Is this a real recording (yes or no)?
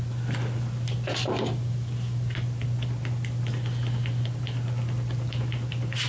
yes